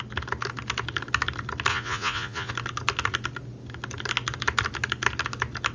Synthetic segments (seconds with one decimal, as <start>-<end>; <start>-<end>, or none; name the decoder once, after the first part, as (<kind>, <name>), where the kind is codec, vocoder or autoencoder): 1.7-2.5 (vocoder, Vocos)